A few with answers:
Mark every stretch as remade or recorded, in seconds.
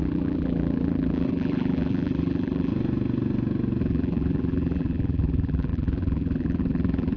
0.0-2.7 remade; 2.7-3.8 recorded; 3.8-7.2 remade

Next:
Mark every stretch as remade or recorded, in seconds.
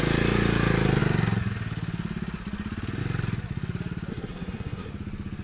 0.0-4.1 recorded; 4.1-4.9 remade; 4.9-5.4 recorded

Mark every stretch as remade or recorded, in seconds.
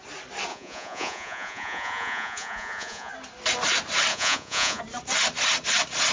0.0-0.5 recorded; 0.5-3.1 remade; 3.1-4.1 recorded; 4.1-4.8 remade; 4.8-6.1 recorded